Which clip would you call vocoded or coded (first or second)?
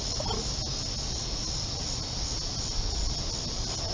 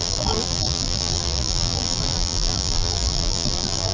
second